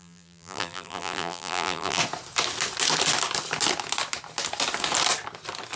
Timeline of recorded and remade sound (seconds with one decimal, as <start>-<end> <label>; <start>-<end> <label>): 0.0-2.0 remade; 2.0-5.8 recorded